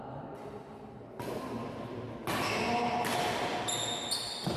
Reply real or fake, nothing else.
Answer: real